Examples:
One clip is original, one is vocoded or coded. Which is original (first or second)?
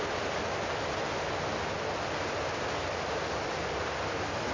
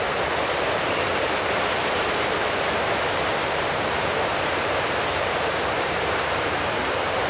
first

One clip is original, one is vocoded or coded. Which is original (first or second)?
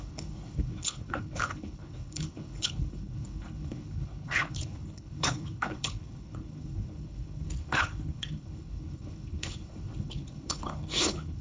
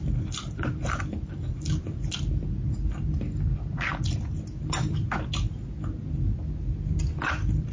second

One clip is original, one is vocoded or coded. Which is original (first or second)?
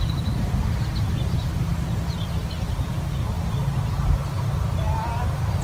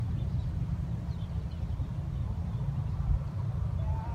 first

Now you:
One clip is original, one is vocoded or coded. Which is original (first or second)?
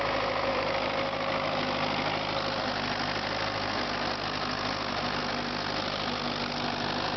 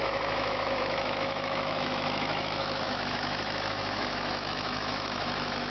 first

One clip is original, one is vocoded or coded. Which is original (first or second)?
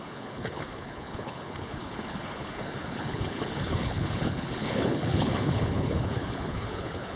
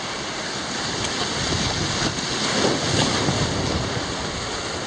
second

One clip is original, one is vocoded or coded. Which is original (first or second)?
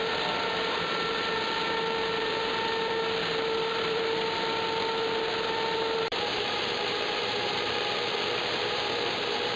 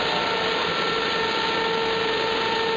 second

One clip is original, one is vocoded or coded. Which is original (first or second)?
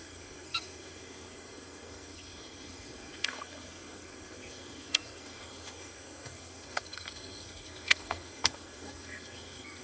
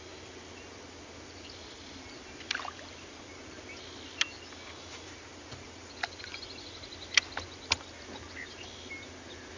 second